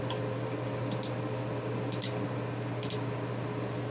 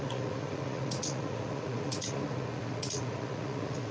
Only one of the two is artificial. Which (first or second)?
second